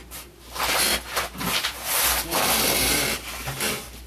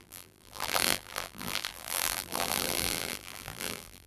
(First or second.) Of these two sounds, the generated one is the second